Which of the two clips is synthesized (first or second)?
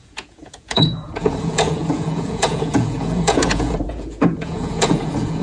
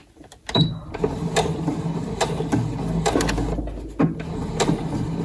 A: first